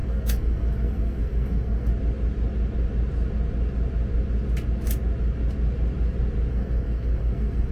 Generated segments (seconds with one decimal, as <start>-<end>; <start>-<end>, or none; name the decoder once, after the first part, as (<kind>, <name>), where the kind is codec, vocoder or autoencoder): 0.0-1.9 (codec, SNAC); 6.5-7.7